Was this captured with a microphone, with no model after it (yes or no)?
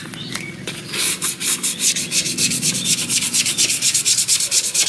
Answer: no